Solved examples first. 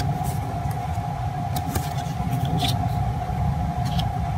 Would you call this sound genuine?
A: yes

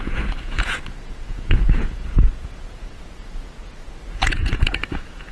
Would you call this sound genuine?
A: no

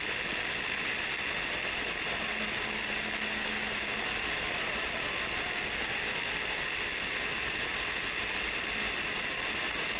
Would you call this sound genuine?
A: yes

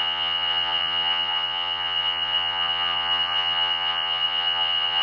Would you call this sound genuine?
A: no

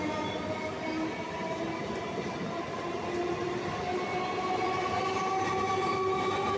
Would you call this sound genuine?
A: yes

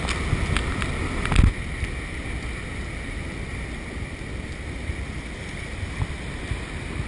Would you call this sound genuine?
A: yes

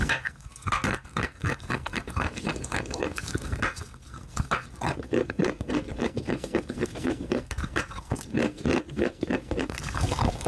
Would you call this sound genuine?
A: no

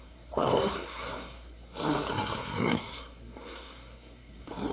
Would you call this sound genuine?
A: no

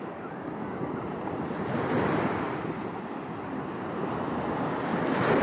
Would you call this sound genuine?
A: yes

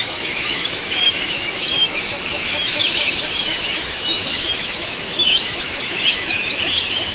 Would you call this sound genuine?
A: no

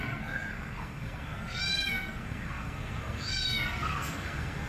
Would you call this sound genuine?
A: no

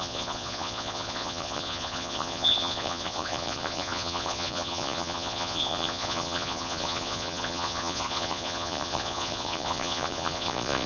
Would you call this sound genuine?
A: no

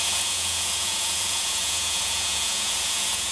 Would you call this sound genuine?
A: no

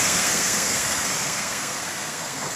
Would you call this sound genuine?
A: no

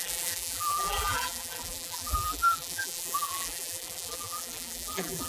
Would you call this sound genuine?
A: no